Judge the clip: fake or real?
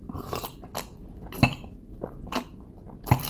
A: real